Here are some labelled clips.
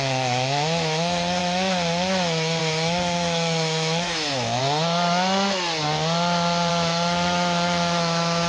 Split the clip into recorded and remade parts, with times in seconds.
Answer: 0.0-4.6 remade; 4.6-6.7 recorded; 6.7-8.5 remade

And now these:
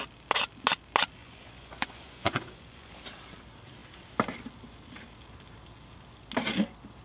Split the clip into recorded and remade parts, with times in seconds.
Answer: 0.0-1.2 recorded; 1.2-2.9 remade; 2.9-7.0 recorded

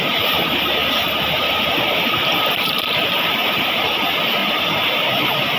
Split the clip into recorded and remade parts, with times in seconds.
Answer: 0.0-0.8 recorded; 0.8-4.0 remade; 4.0-4.4 recorded; 4.4-4.9 remade; 4.9-5.6 recorded

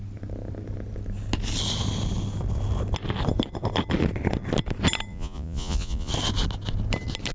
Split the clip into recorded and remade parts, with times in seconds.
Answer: 0.0-5.1 recorded; 5.1-6.1 remade; 6.1-7.3 recorded

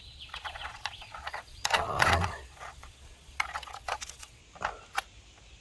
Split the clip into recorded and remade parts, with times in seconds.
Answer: 0.0-4.4 remade; 4.4-5.6 recorded

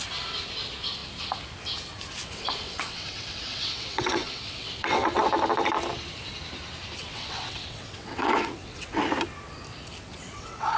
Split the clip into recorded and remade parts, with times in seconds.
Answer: 0.0-2.2 recorded; 2.2-5.3 remade; 5.3-7.0 recorded; 7.0-9.0 remade; 9.0-10.1 recorded; 10.1-10.8 remade

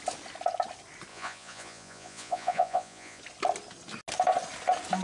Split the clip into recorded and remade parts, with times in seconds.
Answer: 0.0-1.1 recorded; 1.1-3.2 remade; 3.2-5.0 recorded

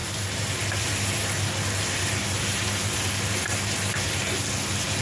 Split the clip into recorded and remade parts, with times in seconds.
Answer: 0.0-5.0 recorded